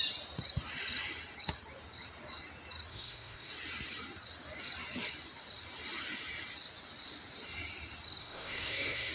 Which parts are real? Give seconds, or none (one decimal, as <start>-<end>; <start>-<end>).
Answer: 0.0-2.9; 3.5-8.2